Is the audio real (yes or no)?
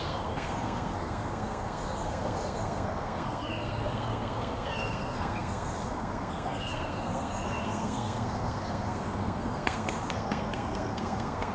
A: no